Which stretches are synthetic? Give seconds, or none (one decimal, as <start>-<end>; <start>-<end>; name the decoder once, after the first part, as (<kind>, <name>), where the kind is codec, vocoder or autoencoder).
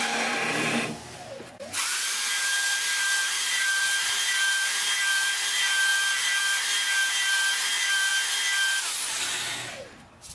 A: 0.0-8.1 (vocoder, BigVGAN v2); 8.8-10.3